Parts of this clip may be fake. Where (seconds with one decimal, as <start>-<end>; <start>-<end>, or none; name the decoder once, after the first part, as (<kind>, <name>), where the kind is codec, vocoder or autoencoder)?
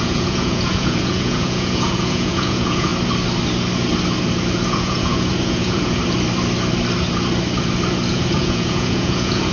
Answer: 0.0-2.9 (vocoder, Vocos); 4.7-6.0; 8.1-9.5